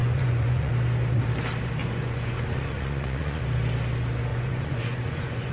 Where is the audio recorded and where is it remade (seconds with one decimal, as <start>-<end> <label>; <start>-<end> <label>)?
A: 0.0-0.7 remade; 0.7-1.8 recorded; 1.8-3.4 remade; 3.4-4.3 recorded; 4.3-5.5 remade